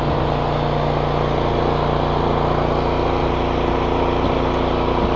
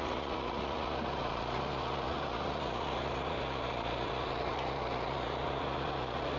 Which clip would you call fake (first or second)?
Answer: second